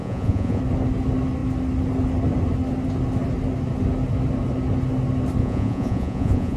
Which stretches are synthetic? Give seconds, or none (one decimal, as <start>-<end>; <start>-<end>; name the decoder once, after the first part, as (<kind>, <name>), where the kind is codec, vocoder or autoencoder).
0.0-0.6 (vocoder, Vocos); 5.4-6.6